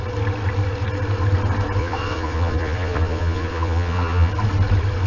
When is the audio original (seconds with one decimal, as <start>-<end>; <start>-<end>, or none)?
0.0-1.8; 4.3-5.1

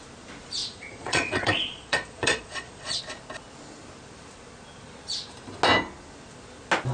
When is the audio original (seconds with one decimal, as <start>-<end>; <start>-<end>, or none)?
0.0-0.6; 3.0-6.9

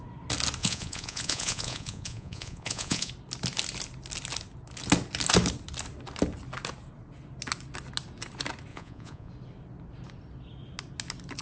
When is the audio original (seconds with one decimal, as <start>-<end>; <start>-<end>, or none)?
0.0-0.6; 3.1-8.7; 9.3-11.4

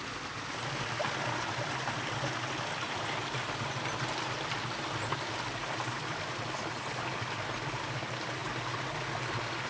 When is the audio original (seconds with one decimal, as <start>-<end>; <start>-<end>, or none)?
0.0-9.7

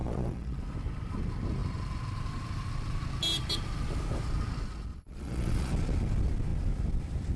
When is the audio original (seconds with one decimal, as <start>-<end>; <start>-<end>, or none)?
0.6-4.9; 5.7-7.4